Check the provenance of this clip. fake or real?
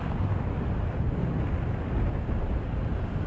real